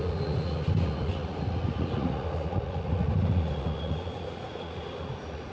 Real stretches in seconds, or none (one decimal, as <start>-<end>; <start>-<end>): none